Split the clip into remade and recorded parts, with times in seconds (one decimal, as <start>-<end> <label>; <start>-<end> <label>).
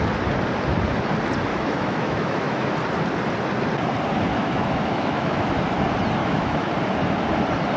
0.0-1.5 recorded; 1.5-2.7 remade; 2.7-4.3 recorded; 4.3-5.5 remade; 5.5-6.2 recorded; 6.2-6.7 remade; 6.7-7.8 recorded